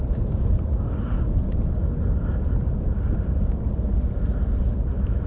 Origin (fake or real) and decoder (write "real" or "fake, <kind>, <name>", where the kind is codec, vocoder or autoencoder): real